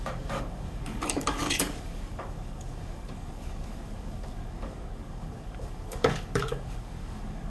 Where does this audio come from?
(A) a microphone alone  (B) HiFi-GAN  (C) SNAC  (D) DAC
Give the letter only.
D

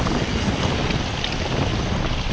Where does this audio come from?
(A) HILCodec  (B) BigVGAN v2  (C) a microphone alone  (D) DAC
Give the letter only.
C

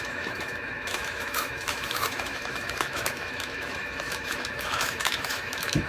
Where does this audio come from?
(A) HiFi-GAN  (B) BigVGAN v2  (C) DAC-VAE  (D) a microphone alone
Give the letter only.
C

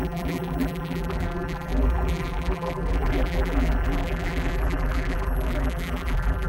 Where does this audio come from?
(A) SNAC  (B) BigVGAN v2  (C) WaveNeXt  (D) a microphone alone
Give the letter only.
B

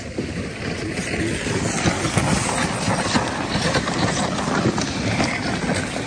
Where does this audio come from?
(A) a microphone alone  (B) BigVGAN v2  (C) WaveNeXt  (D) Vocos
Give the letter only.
A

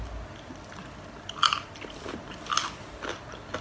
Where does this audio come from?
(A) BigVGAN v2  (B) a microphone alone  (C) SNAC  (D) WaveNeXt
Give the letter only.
B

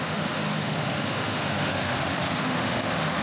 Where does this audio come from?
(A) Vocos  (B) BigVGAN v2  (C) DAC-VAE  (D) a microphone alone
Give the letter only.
C